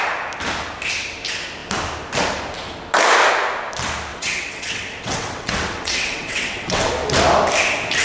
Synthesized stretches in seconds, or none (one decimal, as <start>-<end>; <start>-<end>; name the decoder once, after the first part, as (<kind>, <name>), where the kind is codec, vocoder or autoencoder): 4.1-6.9 (vocoder, WaveNeXt)